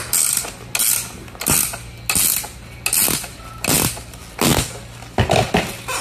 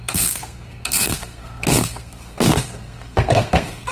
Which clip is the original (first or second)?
first